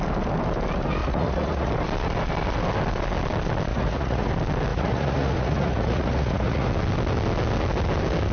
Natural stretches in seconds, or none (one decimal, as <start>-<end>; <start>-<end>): 0.0-1.0; 1.7-3.7; 4.3-4.7; 6.7-8.3